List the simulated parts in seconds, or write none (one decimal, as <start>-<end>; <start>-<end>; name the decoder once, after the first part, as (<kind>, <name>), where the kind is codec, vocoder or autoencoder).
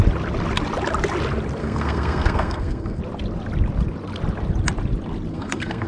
1.6-3.0 (codec, SNAC); 5.3-5.9